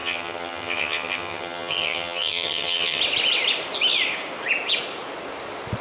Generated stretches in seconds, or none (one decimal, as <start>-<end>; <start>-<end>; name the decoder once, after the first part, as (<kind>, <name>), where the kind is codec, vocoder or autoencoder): 0.0-3.0 (vocoder, HiFi-GAN)